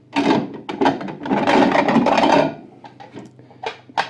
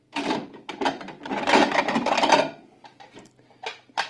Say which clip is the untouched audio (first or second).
first